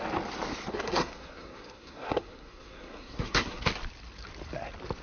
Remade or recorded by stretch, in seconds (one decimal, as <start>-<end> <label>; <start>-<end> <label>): 0.0-0.7 recorded; 0.7-3.7 remade; 3.7-5.0 recorded